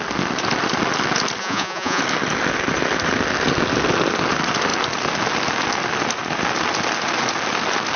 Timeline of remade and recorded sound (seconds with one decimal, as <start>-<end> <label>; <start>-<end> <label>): 0.0-1.4 recorded; 1.4-2.0 remade; 2.0-8.0 recorded